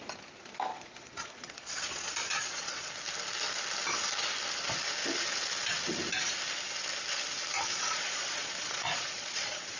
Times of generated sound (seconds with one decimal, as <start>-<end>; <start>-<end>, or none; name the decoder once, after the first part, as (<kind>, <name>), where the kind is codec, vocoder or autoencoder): 0.7-2.9 (vocoder, Vocos); 7.7-9.8